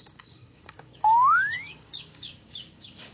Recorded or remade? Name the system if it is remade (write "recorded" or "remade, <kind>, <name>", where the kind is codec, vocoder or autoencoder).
remade, codec, DAC